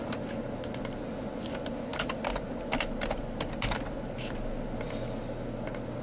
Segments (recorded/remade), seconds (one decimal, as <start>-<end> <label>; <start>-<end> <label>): 0.0-6.0 recorded